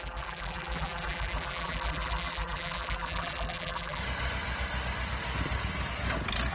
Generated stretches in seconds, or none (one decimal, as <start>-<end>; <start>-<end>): 0.0-4.0